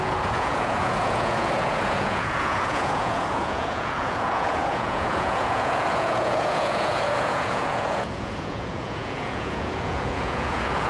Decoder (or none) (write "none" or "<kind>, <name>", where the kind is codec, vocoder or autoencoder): vocoder, Vocos